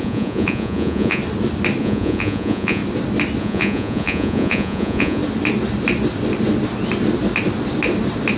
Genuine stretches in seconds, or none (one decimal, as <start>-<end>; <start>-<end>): 1.2-1.8; 2.8-3.4; 5.2-8.4